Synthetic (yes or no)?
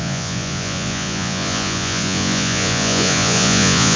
yes